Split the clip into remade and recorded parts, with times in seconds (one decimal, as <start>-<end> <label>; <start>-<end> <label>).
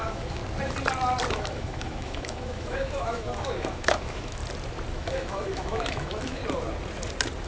0.0-0.4 remade; 0.4-1.3 recorded; 1.3-4.4 remade; 4.4-5.0 recorded; 5.0-6.4 remade; 6.4-7.5 recorded